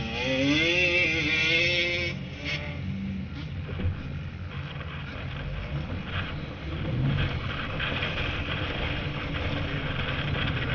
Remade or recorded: recorded